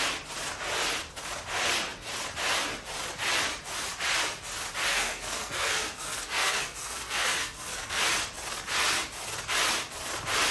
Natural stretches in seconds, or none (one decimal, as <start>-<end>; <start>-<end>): 0.0-4.9; 8.0-10.5